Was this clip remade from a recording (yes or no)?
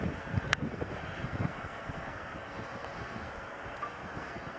yes